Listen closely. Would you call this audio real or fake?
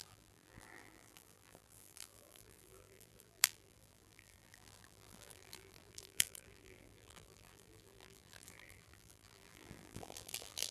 fake